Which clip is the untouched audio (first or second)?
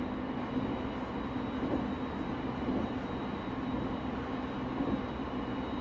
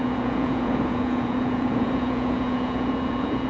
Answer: first